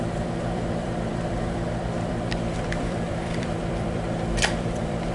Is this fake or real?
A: fake